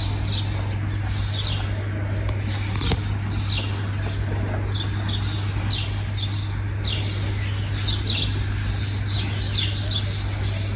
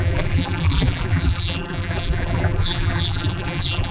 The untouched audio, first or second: first